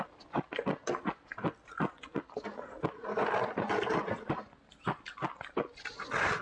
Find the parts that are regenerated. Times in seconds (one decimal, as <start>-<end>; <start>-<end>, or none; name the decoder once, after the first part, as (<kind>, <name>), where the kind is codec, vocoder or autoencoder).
none